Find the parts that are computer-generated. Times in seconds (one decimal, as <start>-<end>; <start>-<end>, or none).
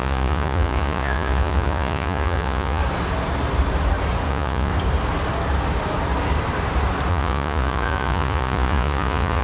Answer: 0.0-2.8; 4.3-4.7; 7.1-9.4